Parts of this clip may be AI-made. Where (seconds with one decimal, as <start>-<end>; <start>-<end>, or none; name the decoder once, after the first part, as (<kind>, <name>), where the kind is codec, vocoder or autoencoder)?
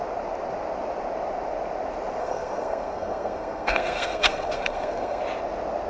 2.2-5.2 (codec, SNAC)